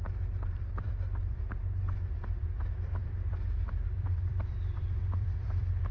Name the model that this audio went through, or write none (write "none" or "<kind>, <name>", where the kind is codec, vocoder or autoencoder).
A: vocoder, BigVGAN v2